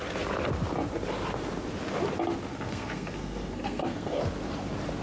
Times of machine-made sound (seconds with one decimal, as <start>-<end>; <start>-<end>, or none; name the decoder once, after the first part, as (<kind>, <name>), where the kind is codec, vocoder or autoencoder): 2.5-4.2 (codec, SNAC)